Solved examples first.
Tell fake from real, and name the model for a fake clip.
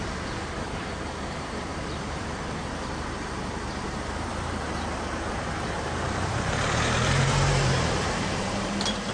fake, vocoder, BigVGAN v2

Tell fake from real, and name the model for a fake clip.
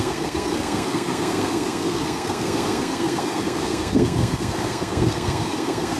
fake, codec, SNAC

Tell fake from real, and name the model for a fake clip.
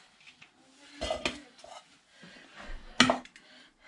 real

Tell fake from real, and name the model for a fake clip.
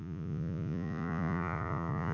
fake, vocoder, Vocos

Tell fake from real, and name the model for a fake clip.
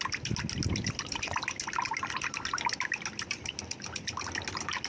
real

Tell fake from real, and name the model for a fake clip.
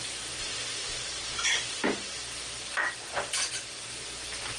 real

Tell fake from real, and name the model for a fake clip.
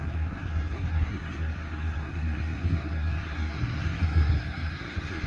fake, codec, SNAC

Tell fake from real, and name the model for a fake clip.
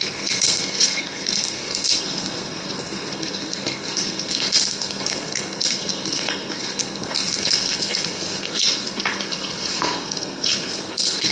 fake, codec, SNAC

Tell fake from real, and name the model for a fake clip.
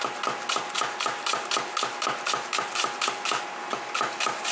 real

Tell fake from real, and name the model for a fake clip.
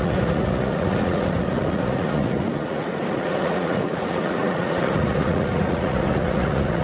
fake, vocoder, Vocos